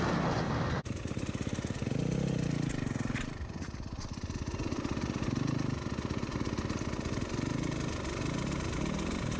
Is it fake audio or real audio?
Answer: real